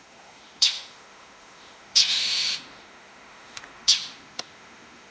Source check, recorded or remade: remade